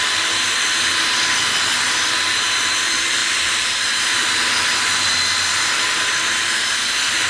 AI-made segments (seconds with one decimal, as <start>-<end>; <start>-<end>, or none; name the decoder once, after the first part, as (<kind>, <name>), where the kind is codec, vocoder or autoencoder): none

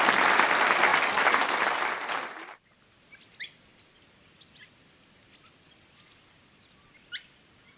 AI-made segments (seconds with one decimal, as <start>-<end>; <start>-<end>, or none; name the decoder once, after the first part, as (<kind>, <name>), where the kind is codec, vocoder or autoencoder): 0.9-1.5 (vocoder, BigVGAN v2)

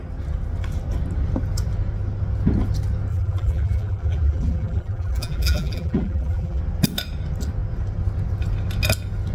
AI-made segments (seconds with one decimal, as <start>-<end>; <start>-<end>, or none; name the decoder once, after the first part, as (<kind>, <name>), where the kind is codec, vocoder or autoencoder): 3.1-6.6 (vocoder, BigVGAN v2)